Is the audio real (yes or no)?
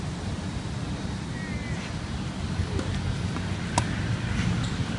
yes